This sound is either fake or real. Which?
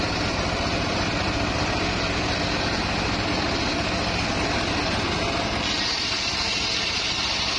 real